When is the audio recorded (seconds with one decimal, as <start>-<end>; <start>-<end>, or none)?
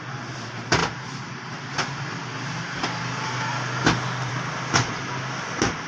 0.0-5.9